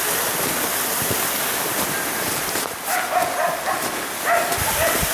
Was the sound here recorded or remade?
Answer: recorded